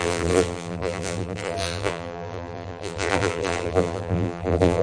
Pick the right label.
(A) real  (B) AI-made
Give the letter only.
B